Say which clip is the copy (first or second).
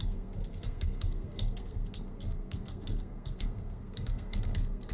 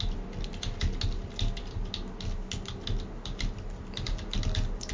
first